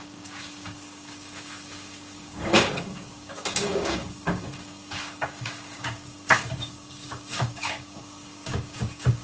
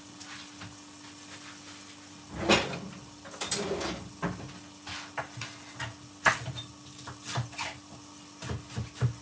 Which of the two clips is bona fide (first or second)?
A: second